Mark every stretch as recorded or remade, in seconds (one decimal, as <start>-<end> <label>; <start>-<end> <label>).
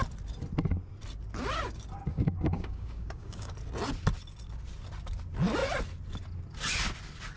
0.0-2.1 recorded; 2.1-3.5 remade; 3.5-7.4 recorded